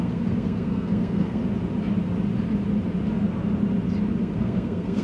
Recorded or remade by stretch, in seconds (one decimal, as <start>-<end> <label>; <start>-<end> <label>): 0.0-1.4 remade; 1.4-4.2 recorded; 4.2-5.0 remade